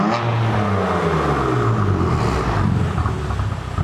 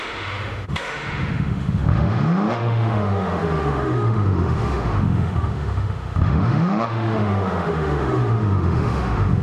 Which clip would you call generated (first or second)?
second